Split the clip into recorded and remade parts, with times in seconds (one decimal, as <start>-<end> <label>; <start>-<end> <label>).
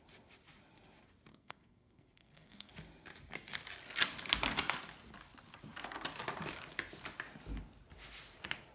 0.0-1.3 recorded; 1.3-2.7 remade; 2.7-8.7 recorded